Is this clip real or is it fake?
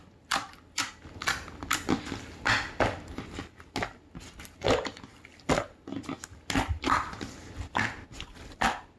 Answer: real